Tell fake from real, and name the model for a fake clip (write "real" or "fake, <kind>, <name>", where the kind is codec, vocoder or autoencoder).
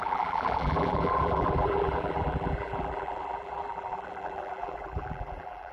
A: fake, vocoder, BigVGAN v2